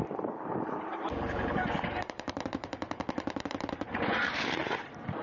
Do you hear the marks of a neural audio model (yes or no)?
yes